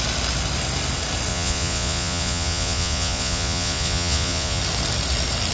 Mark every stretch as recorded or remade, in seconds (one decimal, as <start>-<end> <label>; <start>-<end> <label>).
0.0-1.3 recorded; 1.3-4.6 remade; 4.6-5.5 recorded